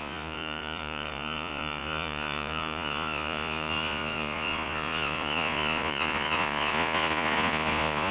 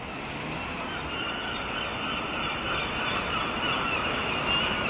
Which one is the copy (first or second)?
first